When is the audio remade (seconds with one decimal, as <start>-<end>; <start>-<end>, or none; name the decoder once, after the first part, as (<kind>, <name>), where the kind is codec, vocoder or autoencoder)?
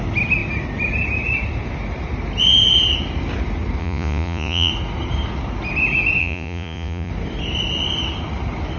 3.8-4.7 (vocoder, Vocos); 6.2-7.1